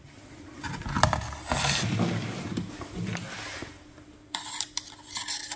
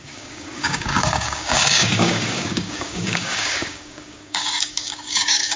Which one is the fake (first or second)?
second